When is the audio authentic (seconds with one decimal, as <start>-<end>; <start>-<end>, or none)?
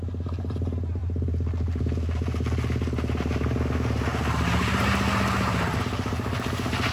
0.0-6.9